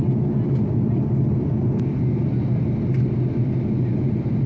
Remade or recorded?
recorded